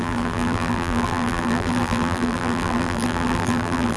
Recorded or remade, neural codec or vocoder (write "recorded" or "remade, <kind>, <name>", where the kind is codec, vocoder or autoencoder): remade, vocoder, BigVGAN v2